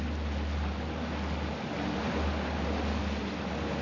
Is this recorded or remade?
recorded